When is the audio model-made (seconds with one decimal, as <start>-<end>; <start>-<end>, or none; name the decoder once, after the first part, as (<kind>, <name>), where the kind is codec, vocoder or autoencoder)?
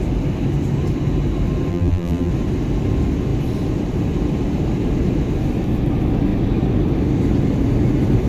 1.7-2.3 (vocoder, BigVGAN v2)